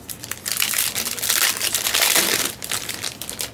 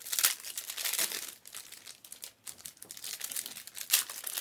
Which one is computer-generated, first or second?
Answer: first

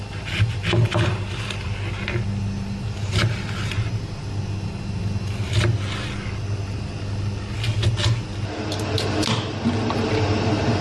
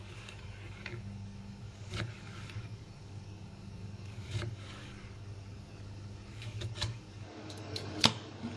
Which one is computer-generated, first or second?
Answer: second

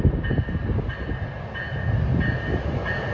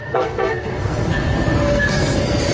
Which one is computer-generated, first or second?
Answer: second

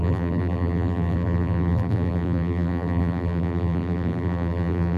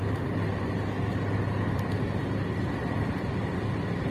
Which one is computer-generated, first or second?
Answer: first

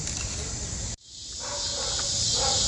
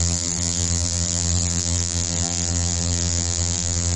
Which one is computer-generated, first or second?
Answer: second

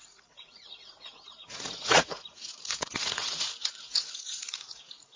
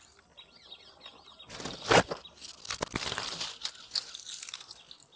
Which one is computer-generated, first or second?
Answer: first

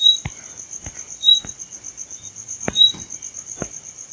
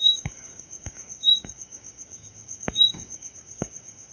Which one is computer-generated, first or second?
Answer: second